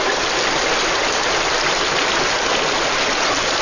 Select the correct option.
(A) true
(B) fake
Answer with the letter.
A